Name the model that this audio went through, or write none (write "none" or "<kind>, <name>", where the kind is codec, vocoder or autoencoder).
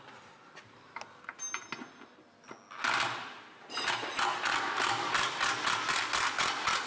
none